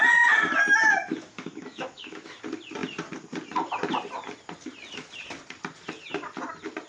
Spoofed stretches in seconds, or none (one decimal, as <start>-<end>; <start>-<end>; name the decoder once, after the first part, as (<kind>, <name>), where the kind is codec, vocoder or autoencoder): 1.0-2.4 (autoencoder, DAC-VAE)